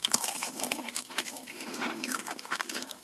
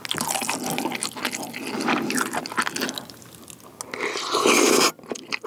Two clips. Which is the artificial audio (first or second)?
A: first